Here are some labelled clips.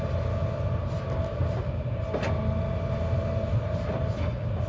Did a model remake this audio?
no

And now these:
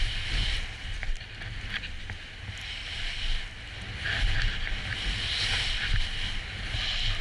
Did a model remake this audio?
no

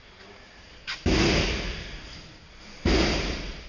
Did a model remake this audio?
no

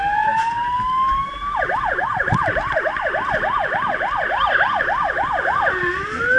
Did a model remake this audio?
no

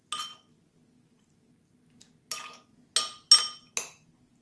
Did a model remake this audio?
no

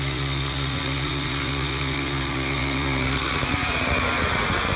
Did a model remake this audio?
yes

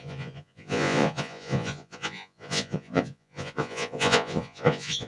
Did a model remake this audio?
yes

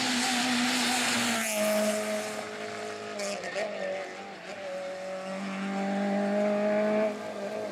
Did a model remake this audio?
no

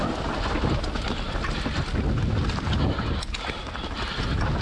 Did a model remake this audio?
no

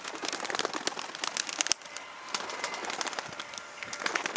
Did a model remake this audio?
no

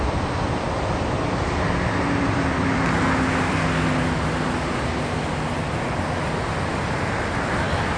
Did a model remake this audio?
no